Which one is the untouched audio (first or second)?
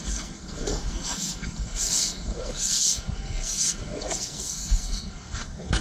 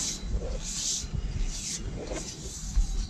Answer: second